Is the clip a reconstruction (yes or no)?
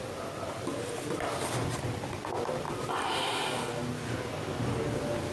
no